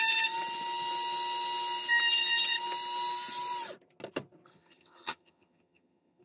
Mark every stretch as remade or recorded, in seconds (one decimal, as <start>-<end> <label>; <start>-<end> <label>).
0.0-4.5 recorded; 4.5-6.2 remade